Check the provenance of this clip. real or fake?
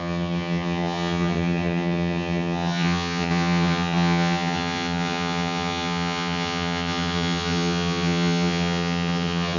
fake